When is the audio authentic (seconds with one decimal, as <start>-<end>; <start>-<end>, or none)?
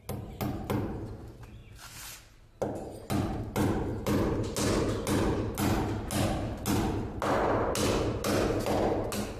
0.0-9.4